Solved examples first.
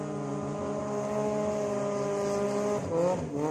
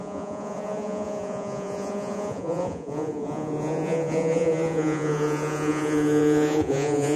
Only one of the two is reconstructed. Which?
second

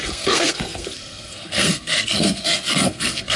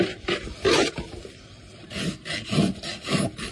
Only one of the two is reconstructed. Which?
first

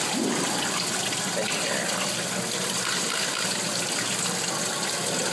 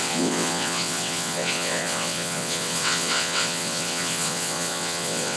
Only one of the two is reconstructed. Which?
second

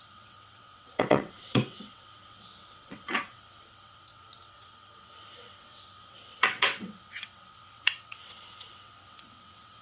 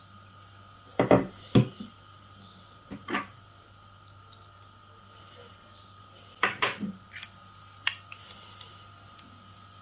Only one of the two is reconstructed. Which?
first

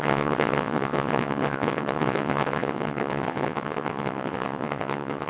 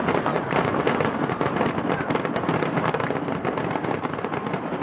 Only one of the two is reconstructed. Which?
first